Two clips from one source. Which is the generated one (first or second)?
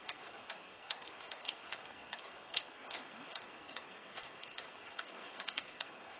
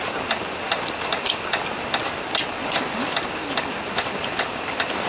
first